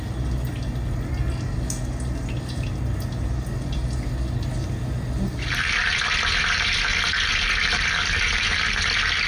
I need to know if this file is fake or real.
real